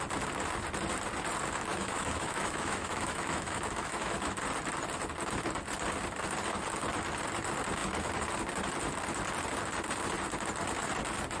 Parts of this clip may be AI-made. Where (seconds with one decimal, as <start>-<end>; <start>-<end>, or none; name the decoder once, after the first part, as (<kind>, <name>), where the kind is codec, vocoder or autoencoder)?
1.7-4.3 (autoencoder, DAC-VAE)